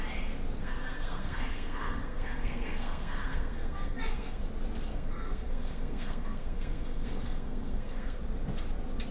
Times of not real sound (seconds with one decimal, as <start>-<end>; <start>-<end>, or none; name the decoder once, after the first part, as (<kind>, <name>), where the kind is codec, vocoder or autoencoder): 0.6-4.4 (codec, SNAC); 4.9-8.2